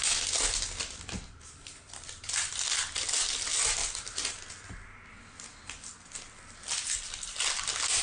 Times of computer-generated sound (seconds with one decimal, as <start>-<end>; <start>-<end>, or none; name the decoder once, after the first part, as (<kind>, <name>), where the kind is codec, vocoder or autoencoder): none